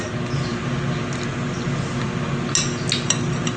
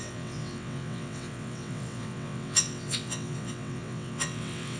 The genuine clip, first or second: first